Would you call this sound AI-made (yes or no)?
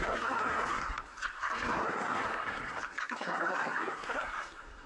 yes